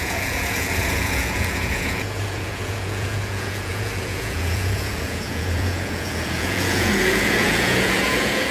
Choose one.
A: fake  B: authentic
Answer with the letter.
A